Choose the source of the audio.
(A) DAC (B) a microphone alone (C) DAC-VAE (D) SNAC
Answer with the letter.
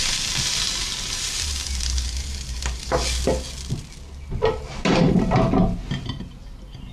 B